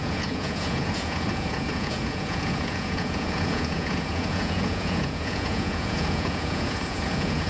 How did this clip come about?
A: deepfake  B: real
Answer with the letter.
A